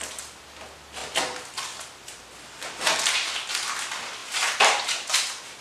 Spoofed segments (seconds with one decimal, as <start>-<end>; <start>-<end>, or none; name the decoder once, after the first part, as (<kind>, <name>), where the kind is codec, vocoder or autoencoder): 4.2-5.6 (vocoder, BigVGAN v2)